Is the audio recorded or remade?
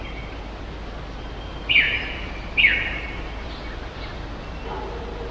recorded